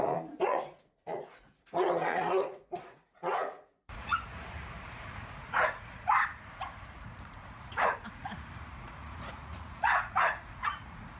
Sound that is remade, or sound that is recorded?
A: remade